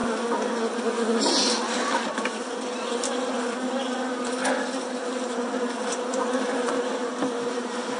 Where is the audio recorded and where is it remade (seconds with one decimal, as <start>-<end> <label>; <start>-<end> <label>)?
0.0-8.0 recorded